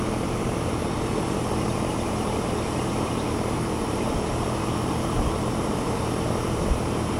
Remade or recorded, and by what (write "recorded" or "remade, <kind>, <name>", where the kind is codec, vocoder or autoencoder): remade, vocoder, BigVGAN v2